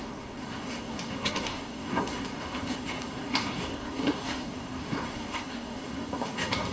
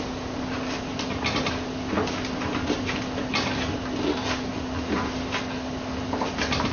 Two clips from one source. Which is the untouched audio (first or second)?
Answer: second